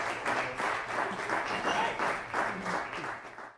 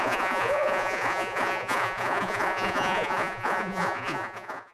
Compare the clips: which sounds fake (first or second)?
second